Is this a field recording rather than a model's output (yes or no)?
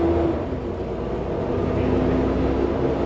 yes